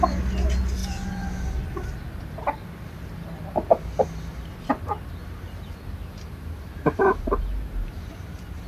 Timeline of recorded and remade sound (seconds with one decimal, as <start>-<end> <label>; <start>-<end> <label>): 0.0-5.2 recorded; 5.2-8.7 remade